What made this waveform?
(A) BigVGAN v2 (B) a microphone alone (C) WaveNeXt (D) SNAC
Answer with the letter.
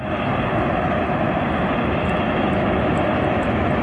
B